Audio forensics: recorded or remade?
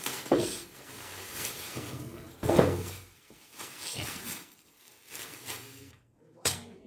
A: remade